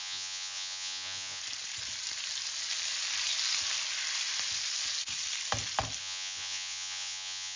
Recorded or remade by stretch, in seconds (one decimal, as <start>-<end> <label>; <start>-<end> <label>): 0.0-1.4 remade; 1.4-6.0 recorded; 6.0-7.6 remade